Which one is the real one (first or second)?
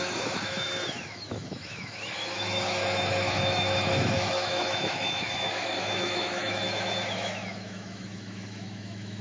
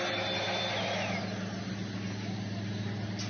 second